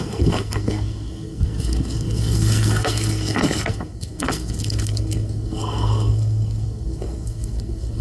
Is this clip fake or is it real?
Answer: fake